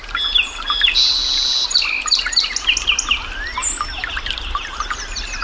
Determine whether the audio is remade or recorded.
recorded